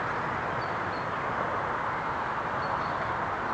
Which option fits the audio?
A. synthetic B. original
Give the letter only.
B